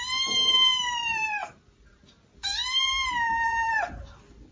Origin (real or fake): fake